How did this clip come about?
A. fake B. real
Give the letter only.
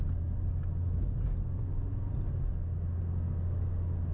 B